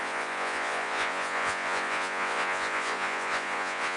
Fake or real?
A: fake